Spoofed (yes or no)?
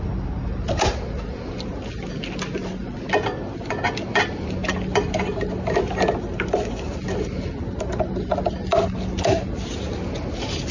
no